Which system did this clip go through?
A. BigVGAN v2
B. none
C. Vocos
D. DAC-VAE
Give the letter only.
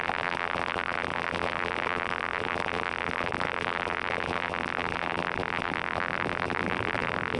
A